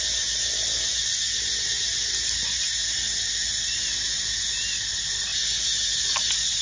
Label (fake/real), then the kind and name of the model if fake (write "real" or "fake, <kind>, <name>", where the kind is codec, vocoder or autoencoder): real